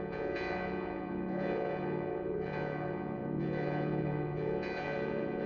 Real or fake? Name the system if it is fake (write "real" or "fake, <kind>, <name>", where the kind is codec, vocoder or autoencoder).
fake, vocoder, Vocos